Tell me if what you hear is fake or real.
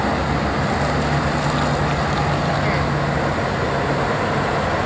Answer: real